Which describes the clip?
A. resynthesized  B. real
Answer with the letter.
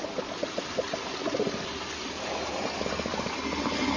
B